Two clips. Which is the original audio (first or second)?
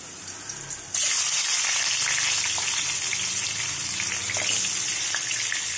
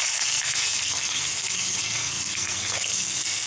first